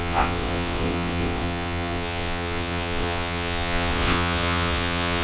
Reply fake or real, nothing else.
fake